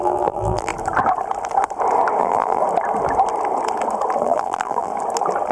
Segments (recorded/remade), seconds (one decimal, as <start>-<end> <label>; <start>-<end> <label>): 0.0-0.7 remade; 0.7-2.2 recorded; 2.2-2.6 remade; 2.6-4.2 recorded; 4.2-4.9 remade; 4.9-5.5 recorded